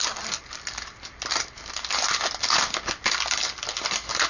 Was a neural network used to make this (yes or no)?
no